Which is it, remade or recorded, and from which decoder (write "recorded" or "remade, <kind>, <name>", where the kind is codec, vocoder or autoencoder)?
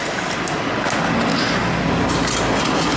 recorded